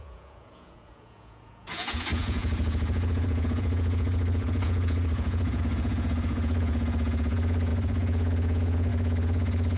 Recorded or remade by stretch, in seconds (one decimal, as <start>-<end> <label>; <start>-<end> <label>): 0.0-9.8 remade